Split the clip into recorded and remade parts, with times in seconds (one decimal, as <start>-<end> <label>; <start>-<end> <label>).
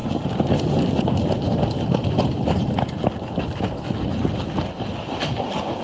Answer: 0.0-5.8 recorded